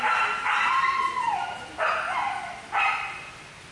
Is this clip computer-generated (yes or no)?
no